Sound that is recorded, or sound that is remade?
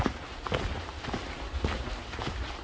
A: recorded